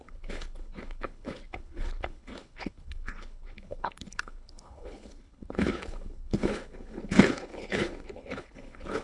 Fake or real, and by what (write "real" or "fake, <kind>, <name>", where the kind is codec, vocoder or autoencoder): fake, codec, HILCodec